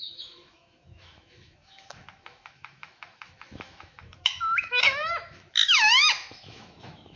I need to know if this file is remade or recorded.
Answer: remade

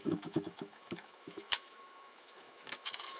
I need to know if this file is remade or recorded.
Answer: remade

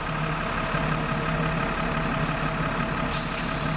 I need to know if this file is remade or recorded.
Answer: recorded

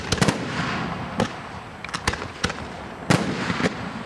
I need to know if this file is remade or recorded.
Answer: recorded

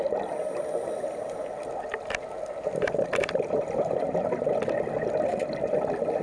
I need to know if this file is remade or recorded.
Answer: recorded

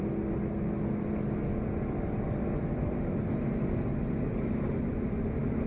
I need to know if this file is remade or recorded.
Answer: recorded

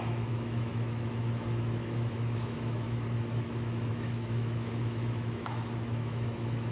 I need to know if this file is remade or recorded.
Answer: remade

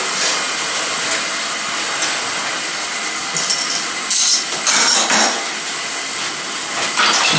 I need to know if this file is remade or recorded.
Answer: recorded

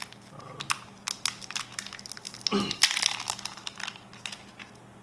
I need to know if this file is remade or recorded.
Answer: recorded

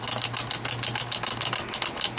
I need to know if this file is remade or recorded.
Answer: recorded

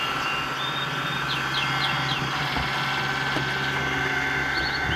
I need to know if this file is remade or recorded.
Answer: recorded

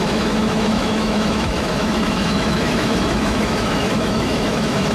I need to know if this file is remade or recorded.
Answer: remade